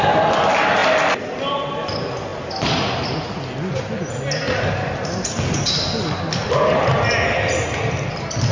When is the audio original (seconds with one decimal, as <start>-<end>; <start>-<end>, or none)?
0.0-8.5